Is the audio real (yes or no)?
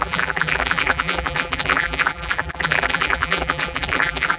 no